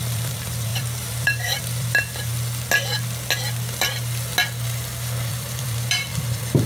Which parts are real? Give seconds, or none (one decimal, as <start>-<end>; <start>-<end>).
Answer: 2.3-5.3